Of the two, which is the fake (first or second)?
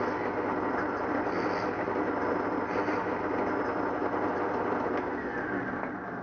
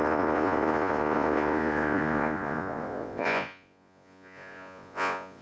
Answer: second